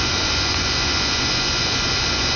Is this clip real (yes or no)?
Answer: no